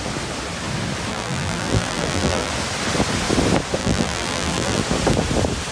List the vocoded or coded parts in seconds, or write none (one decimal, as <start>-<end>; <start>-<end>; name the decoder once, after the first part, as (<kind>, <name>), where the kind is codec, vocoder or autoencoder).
1.1-2.5 (vocoder, BigVGAN v2); 3.8-4.8

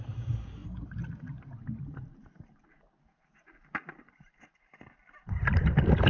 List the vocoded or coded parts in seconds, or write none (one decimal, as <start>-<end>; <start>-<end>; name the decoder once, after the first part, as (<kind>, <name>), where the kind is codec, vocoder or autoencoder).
none

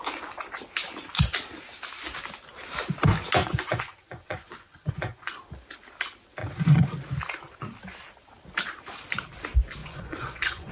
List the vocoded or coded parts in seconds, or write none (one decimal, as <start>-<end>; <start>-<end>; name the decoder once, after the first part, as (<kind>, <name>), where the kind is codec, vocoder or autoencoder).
3.4-5.3 (vocoder, Vocos); 6.4-7.0; 9.8-10.7

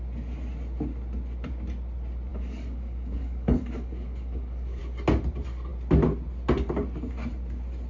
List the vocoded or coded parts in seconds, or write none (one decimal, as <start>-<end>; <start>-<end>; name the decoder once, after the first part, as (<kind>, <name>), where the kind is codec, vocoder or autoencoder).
2.3-4.8 (codec, DAC)

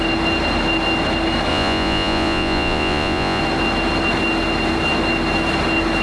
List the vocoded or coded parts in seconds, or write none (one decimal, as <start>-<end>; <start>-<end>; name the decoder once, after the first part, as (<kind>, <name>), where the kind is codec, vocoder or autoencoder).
1.5-3.4 (vocoder, Vocos)

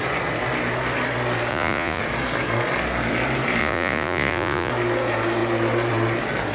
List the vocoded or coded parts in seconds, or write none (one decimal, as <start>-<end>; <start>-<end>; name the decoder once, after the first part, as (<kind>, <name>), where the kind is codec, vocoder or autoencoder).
1.5-2.0 (vocoder, Vocos); 3.6-4.7

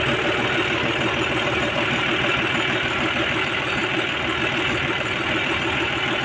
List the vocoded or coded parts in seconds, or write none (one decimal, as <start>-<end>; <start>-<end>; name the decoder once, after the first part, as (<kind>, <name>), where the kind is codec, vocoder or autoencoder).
none

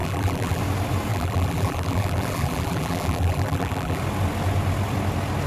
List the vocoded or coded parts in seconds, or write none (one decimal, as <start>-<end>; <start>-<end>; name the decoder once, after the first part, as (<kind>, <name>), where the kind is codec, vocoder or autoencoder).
0.0-0.6 (vocoder, BigVGAN v2); 1.1-4.0